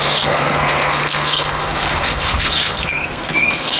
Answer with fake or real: fake